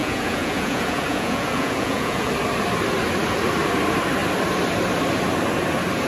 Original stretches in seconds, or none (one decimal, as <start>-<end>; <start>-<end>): 2.3-6.1